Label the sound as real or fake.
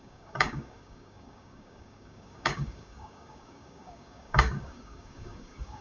fake